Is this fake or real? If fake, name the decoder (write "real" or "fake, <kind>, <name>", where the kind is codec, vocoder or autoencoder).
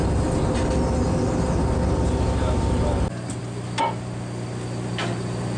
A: real